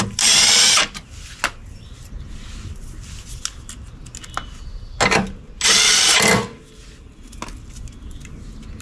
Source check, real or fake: real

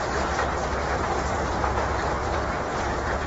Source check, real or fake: fake